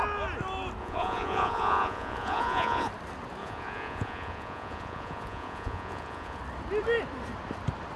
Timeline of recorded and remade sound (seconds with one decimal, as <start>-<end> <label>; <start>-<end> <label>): 0.0-0.8 recorded; 0.8-2.9 remade; 2.9-3.4 recorded; 3.4-6.4 remade; 6.4-8.0 recorded